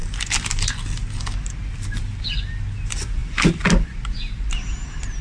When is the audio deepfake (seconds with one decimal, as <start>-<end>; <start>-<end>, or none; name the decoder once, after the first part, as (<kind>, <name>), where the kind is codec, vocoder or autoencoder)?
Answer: none